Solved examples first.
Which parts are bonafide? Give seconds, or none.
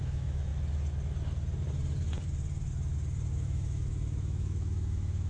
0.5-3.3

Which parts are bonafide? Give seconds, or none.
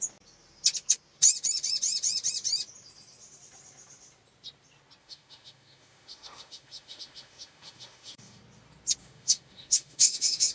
0.0-5.0; 8.4-9.0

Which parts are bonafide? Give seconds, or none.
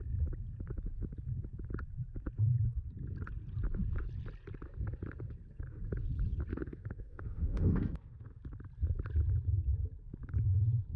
0.0-6.5; 8.4-11.0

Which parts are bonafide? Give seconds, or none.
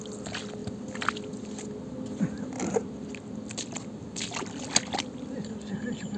0.0-6.2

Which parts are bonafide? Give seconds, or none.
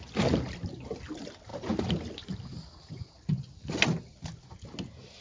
0.0-5.2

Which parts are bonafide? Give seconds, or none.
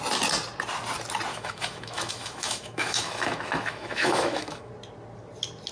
0.0-1.3; 4.7-5.7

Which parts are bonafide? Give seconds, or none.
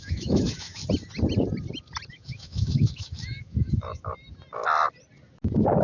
0.8-2.1; 4.1-5.8